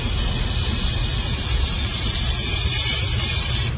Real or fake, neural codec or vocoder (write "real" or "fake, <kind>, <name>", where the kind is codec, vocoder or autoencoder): real